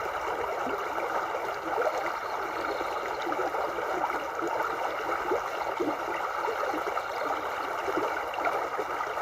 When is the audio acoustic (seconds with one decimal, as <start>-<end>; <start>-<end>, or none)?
0.0-9.2